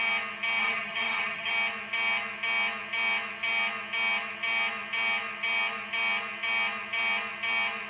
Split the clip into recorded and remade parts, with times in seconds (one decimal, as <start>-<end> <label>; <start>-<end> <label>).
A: 0.0-0.6 recorded; 0.6-1.5 remade; 1.5-7.9 recorded